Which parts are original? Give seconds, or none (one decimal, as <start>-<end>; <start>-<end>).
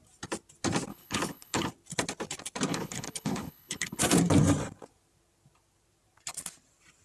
0.0-0.9; 1.7-2.7; 4.0-7.0